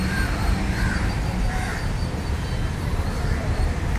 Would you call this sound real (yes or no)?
no